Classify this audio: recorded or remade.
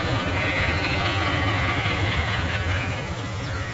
remade